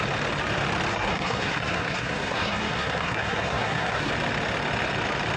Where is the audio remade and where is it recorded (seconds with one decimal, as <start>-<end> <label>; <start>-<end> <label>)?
0.0-0.9 recorded; 0.9-4.1 remade; 4.1-5.4 recorded